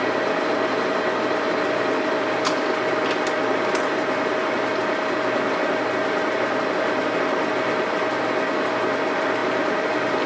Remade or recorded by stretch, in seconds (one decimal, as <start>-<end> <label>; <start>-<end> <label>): 0.0-10.3 recorded